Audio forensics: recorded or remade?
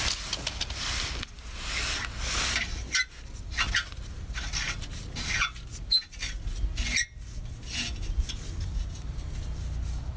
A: recorded